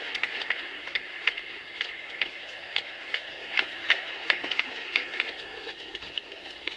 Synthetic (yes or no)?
yes